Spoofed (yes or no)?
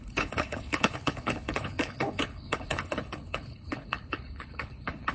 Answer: yes